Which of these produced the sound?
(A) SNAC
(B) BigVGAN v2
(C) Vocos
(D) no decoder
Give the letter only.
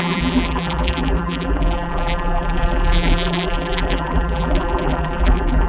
B